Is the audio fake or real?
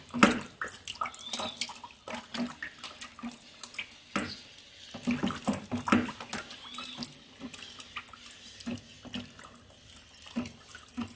real